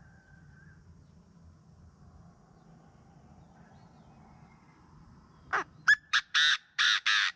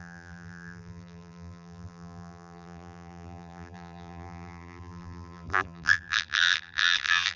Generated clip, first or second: second